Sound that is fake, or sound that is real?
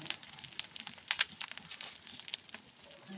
real